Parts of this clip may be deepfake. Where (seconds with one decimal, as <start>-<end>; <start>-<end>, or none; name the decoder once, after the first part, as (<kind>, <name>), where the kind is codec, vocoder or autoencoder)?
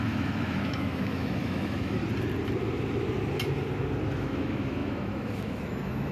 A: 0.0-2.0 (autoencoder, DAC-VAE); 4.1-6.1